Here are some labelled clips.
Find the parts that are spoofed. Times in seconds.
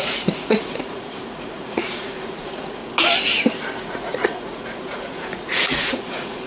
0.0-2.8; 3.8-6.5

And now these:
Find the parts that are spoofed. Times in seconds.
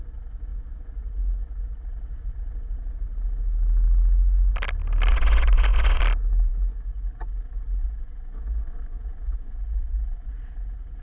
5.1-6.0; 7.8-10.3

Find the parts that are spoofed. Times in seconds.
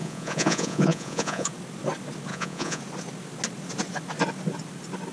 0.0-1.5; 2.3-2.8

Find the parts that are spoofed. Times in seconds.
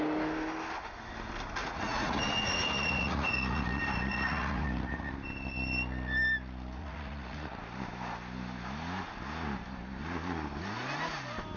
1.6-3.6; 4.1-5.1; 6.8-7.5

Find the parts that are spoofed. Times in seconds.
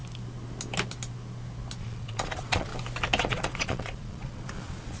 1.8-2.7; 3.2-5.0